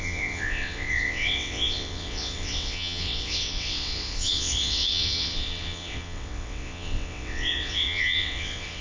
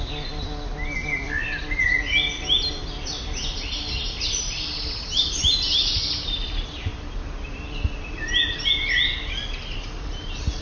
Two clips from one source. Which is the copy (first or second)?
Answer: first